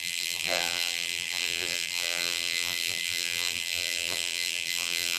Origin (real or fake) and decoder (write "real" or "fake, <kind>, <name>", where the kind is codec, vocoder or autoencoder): fake, vocoder, BigVGAN v2